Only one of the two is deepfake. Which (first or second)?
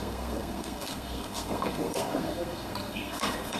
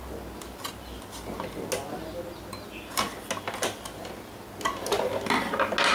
first